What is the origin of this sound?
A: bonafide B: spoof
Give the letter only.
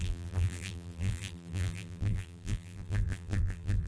B